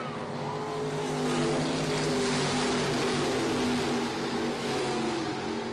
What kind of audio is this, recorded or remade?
recorded